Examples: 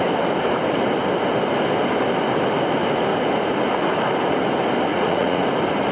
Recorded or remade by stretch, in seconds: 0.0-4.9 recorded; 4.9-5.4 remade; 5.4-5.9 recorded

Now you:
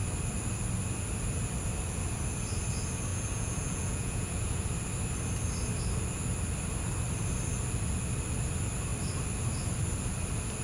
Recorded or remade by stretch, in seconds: 0.0-3.1 recorded; 3.1-4.6 remade; 4.6-10.6 recorded

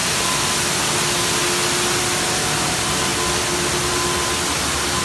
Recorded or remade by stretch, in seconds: 0.0-5.0 recorded

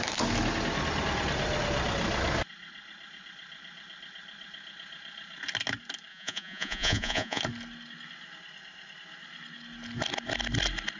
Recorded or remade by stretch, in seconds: 0.0-6.1 recorded; 6.1-7.4 remade; 7.4-11.0 recorded

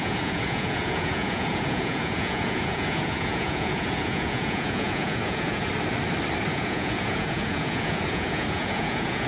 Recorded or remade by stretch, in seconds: 0.0-5.7 remade; 5.7-6.5 recorded; 6.5-9.3 remade

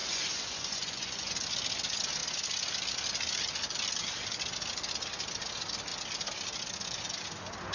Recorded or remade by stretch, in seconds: 0.0-1.3 remade; 1.3-7.7 recorded

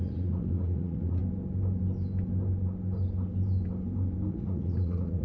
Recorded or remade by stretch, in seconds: 0.0-1.2 remade; 1.2-4.3 recorded; 4.3-5.2 remade

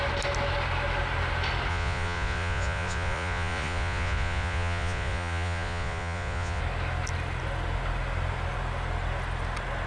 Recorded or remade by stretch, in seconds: 0.0-1.7 recorded; 1.7-6.6 remade; 6.6-9.9 recorded